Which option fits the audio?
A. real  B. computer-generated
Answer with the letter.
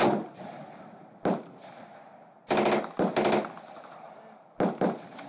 A